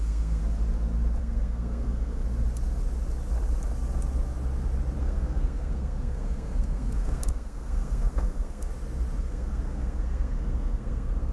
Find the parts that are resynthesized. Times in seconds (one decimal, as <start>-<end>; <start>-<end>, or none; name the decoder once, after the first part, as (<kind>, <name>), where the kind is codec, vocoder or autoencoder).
0.0-0.4 (codec, SNAC); 1.2-2.2; 5.0-8.7; 9.2-11.3

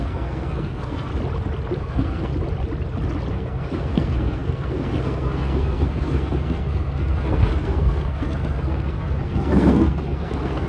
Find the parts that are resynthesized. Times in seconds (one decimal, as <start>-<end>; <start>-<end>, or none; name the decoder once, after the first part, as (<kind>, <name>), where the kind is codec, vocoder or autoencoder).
0.0-1.1 (codec, SNAC); 1.8-2.3; 3.3-10.7